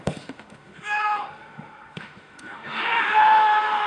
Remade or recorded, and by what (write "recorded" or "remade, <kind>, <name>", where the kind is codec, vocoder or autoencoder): remade, autoencoder, DAC-VAE